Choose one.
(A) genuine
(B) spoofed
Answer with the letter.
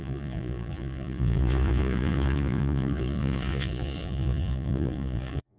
B